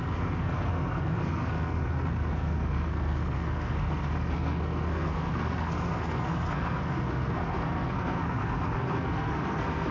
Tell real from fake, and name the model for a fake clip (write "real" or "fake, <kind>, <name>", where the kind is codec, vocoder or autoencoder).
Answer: fake, codec, SNAC